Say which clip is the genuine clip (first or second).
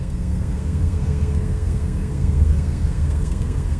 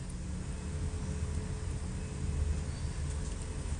second